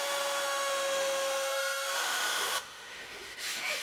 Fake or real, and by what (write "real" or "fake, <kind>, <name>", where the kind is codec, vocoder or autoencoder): fake, autoencoder, DAC-VAE